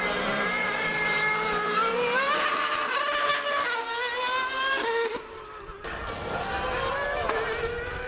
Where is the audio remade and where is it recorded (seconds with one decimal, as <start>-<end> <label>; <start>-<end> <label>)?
0.0-3.3 remade; 3.3-6.9 recorded; 6.9-8.1 remade